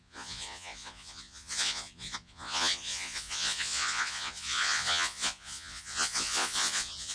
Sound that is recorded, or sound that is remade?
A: remade